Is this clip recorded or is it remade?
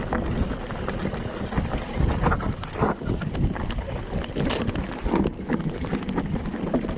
recorded